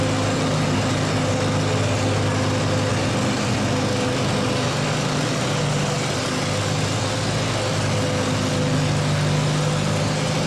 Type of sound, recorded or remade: recorded